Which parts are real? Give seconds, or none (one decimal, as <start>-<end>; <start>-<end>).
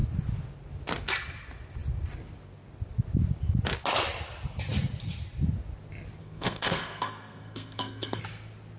0.0-6.2; 8.2-8.8